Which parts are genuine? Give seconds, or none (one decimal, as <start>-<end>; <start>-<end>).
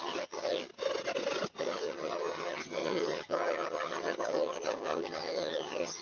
0.7-1.6